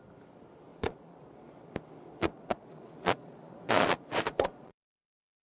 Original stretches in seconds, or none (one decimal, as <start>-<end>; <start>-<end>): 0.0-0.7; 1.7-2.1